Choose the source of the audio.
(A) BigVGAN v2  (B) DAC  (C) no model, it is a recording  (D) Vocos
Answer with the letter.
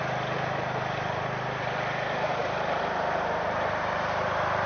A